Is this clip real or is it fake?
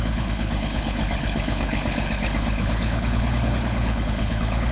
fake